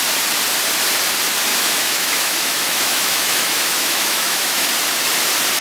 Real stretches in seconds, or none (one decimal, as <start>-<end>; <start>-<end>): 0.0-1.5; 4.7-5.6